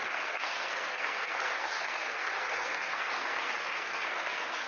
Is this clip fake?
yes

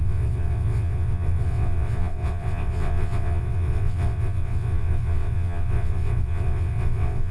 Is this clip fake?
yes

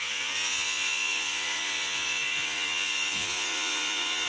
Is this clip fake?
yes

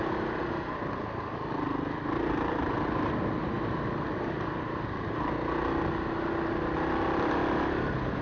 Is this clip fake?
no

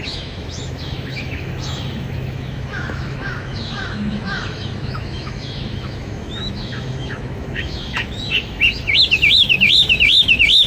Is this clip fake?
yes